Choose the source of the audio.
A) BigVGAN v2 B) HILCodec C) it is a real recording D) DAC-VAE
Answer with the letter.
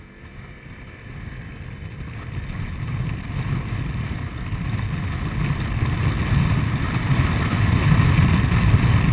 C